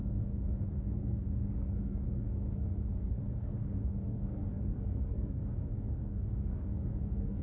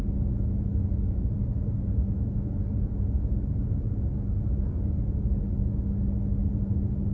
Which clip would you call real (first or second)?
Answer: second